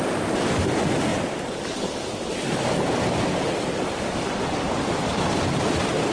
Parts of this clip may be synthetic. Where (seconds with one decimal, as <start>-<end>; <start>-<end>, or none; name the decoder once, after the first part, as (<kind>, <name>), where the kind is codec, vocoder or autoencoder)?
1.1-4.8 (vocoder, BigVGAN v2)